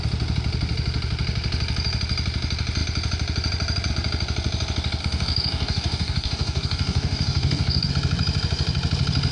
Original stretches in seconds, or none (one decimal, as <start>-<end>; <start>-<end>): 0.0-5.0; 7.9-9.3